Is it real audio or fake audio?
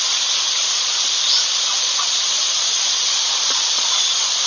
fake